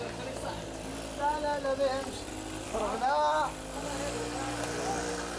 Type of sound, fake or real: real